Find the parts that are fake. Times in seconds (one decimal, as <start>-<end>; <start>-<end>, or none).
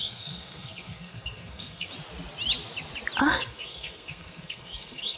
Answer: 0.0-1.9; 3.2-5.2